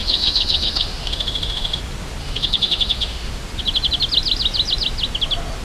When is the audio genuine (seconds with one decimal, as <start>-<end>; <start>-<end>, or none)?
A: 1.8-2.2; 3.3-5.6